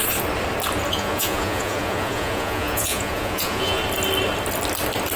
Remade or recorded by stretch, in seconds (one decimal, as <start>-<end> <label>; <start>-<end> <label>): 0.0-0.9 recorded; 0.9-3.8 remade; 3.8-5.2 recorded